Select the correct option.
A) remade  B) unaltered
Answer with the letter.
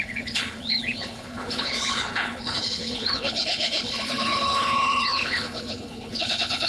A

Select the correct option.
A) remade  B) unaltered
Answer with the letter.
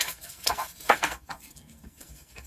A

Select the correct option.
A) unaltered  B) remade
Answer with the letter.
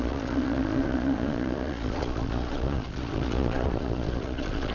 B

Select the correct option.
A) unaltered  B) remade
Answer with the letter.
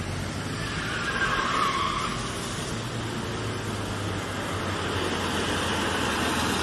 A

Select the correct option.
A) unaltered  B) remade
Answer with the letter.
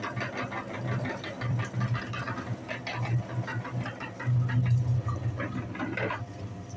A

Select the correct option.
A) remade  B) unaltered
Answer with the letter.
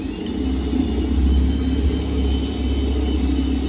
B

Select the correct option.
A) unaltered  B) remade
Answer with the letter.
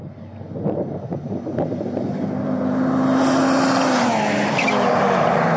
A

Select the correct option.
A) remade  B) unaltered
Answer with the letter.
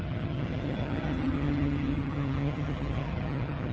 A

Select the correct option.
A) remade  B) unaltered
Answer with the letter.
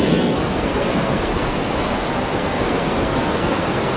A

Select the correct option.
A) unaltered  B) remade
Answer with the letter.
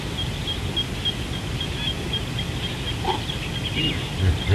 A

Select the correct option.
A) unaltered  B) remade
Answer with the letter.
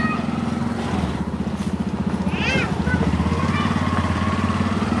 A